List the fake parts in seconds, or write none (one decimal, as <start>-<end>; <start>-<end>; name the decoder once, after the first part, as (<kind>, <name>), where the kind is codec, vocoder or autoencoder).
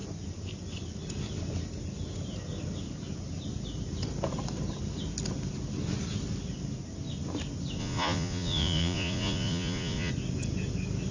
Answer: 7.8-10.1 (vocoder, Vocos)